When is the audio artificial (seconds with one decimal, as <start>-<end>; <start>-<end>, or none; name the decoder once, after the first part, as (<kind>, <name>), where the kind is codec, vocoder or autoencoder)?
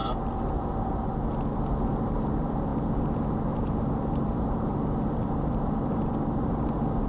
1.9-7.1 (vocoder, BigVGAN v2)